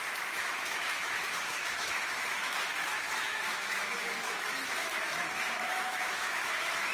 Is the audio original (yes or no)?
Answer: no